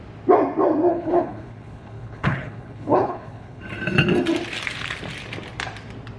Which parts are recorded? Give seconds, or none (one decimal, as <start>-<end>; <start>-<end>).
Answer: 0.0-0.9; 3.6-6.2